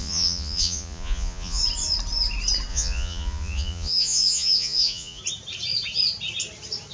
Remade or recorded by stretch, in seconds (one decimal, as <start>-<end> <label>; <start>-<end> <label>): 0.0-1.6 remade; 1.6-2.7 recorded; 2.7-5.2 remade; 5.2-6.9 recorded